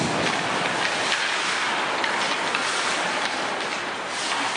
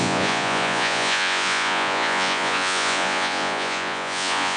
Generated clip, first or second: second